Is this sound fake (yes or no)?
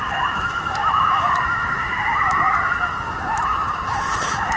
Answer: yes